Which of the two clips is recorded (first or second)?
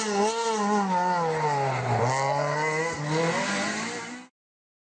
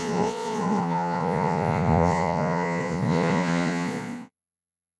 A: first